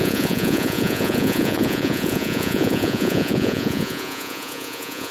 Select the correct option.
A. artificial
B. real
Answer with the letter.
A